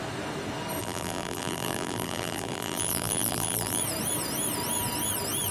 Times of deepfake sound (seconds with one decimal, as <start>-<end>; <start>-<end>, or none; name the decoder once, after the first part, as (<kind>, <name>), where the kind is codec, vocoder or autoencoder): 0.8-3.8 (vocoder, BigVGAN v2)